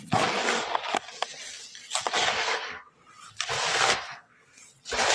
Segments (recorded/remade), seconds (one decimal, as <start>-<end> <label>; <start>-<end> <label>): 0.0-2.4 recorded; 2.4-2.9 remade; 2.9-3.7 recorded; 3.7-4.6 remade; 4.6-5.1 recorded